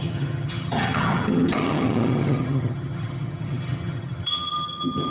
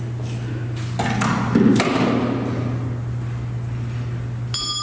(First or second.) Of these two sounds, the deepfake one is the first